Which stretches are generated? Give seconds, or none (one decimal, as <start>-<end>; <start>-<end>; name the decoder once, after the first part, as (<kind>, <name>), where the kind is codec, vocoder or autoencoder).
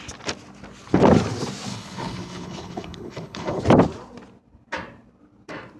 1.7-3.6 (codec, HILCodec)